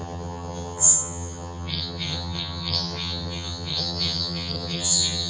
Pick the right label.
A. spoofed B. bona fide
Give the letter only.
A